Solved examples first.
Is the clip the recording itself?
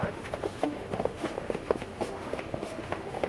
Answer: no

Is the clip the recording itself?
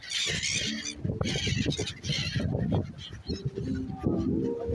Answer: yes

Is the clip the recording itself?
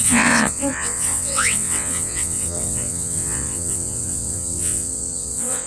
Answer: no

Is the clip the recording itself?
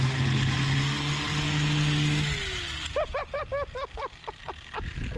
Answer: yes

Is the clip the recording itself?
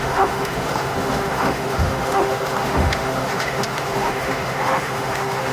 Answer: no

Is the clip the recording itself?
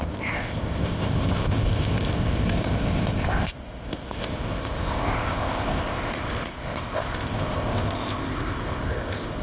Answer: no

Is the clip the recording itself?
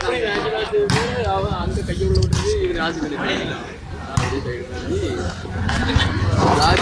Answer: yes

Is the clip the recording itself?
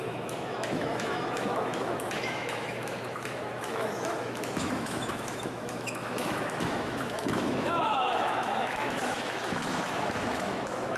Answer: no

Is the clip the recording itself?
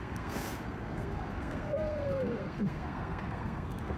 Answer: no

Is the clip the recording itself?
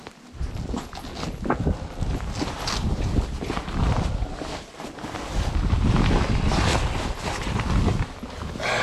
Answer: yes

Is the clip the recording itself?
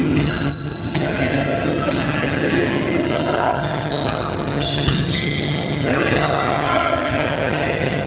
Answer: no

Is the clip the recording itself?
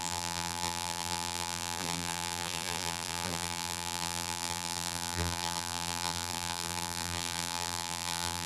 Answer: no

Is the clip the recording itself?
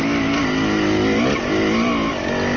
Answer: yes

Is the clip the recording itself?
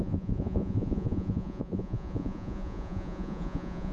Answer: no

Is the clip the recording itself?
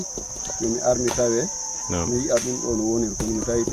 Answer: yes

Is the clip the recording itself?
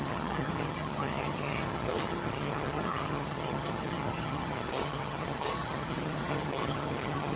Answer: no